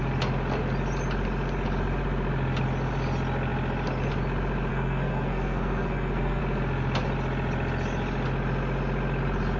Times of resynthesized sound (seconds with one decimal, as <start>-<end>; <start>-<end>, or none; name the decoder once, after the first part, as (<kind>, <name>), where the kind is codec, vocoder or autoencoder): 4.7-6.4 (codec, SNAC)